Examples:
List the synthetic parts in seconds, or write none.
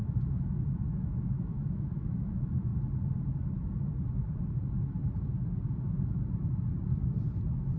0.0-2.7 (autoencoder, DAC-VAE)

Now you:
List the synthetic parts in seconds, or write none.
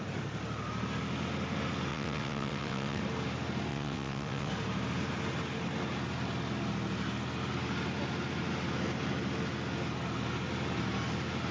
1.9-3.0 (vocoder, WaveNeXt); 3.7-4.5